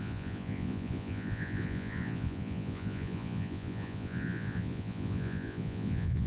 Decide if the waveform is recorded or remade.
remade